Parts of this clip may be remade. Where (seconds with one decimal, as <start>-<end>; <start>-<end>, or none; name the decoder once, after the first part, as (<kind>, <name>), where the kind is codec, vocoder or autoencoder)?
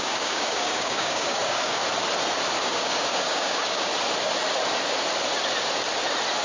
0.0-1.8 (codec, DAC); 2.6-3.9